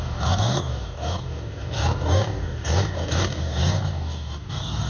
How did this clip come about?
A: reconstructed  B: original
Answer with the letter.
A